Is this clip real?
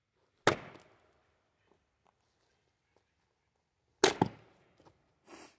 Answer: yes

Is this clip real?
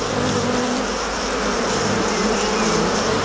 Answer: yes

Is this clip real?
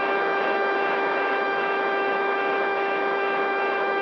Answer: no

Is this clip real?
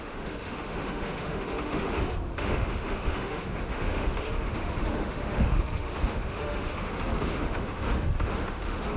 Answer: no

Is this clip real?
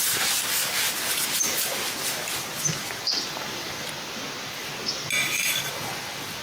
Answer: yes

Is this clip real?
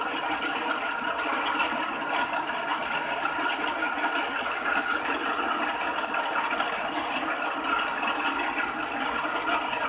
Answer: yes